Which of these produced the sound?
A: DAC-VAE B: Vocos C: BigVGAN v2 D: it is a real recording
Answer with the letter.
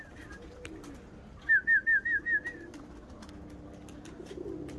D